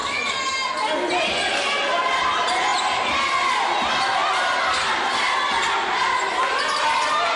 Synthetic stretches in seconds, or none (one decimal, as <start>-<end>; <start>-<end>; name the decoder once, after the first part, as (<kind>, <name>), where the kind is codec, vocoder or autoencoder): none